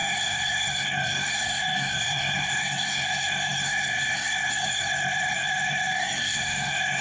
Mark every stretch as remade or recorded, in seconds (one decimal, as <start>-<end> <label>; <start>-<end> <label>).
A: 0.0-7.0 remade